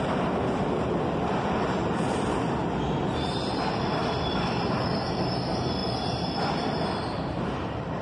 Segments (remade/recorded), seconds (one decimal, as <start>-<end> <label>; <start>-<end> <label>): 0.0-2.6 remade; 2.6-3.1 recorded; 3.1-4.0 remade; 4.0-4.7 recorded; 4.7-5.8 remade; 5.8-7.0 recorded; 7.0-8.0 remade